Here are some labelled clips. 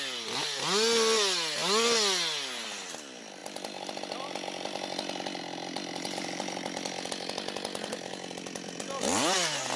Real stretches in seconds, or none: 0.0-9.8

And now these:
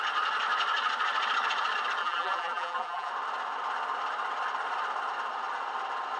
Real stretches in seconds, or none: 0.0-2.0; 3.1-6.2

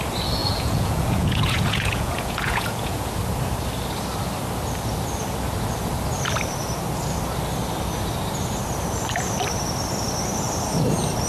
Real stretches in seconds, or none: 0.0-0.4; 3.1-11.3

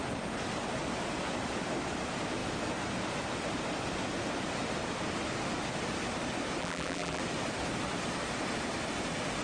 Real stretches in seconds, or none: 0.0-6.6; 7.2-9.4